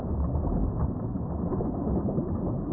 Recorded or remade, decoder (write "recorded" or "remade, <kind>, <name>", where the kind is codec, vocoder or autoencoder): recorded